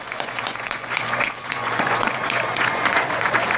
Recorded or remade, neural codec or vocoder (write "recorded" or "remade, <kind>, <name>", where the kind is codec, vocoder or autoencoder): remade, vocoder, Vocos